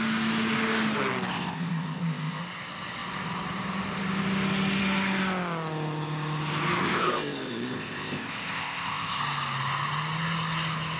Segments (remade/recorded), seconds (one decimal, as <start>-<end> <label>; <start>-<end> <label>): 0.0-1.3 recorded; 1.3-2.4 remade; 2.4-6.8 recorded; 6.8-9.2 remade; 9.2-11.0 recorded